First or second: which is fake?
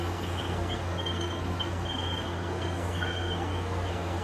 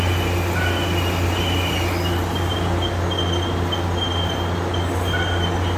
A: first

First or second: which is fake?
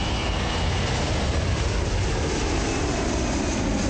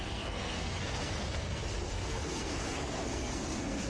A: second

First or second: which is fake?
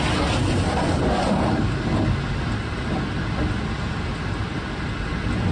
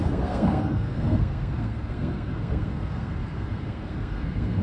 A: second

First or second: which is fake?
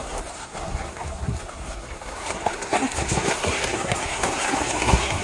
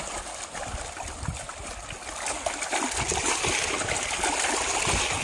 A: first